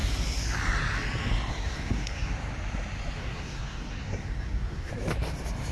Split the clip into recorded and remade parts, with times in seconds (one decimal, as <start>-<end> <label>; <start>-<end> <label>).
0.0-1.5 recorded; 1.5-2.3 remade; 2.3-3.2 recorded; 3.2-4.9 remade; 4.9-5.7 recorded